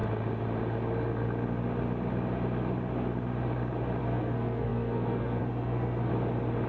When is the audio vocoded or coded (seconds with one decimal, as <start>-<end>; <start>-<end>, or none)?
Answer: 4.0-6.1